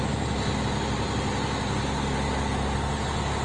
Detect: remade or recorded recorded